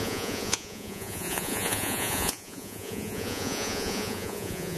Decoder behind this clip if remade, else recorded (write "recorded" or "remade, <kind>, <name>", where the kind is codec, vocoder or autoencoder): remade, vocoder, Vocos